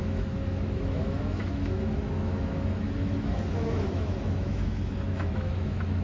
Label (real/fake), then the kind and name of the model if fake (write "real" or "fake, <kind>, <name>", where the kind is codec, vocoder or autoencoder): fake, autoencoder, DAC-VAE